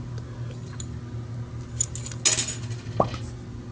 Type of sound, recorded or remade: recorded